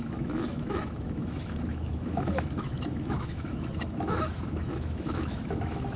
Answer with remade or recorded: remade